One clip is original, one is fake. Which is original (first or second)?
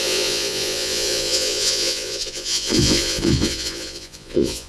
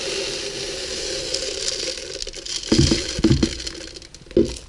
second